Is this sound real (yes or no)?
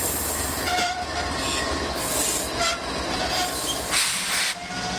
yes